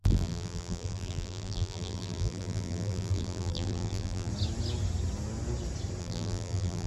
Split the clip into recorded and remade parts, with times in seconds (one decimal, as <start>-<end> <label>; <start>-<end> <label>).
0.0-4.3 remade; 4.3-6.0 recorded; 6.0-6.9 remade